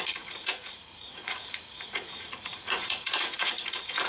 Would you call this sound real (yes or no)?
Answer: no